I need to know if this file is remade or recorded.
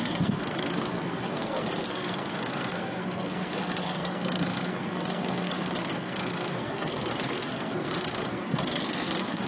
remade